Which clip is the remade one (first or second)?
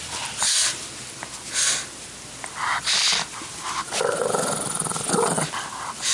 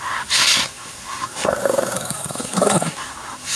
second